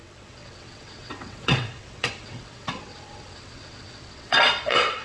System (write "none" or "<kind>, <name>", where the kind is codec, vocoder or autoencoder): vocoder, WaveNeXt